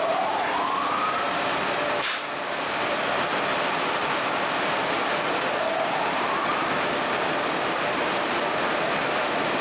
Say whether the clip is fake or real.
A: real